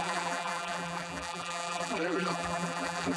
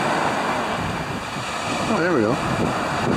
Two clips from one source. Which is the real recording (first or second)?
second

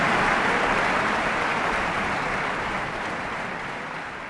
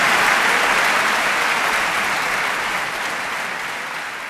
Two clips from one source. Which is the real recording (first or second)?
second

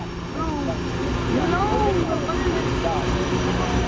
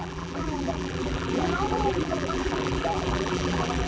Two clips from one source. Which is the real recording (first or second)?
first